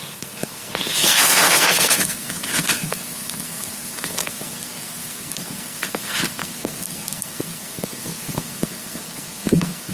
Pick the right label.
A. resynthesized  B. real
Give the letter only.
A